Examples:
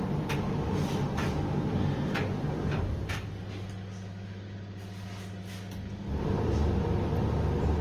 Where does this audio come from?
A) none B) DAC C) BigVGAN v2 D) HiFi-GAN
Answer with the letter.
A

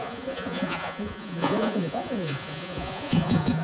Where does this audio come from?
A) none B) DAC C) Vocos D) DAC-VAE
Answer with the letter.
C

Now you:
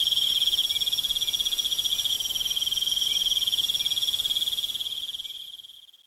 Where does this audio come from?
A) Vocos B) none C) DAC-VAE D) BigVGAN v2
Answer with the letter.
B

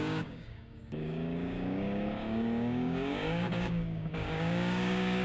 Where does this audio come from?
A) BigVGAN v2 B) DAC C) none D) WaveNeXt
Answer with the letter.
B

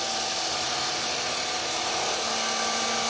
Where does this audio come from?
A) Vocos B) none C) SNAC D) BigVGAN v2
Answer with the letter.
B